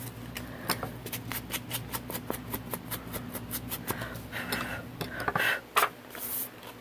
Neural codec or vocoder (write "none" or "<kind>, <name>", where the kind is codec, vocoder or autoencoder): none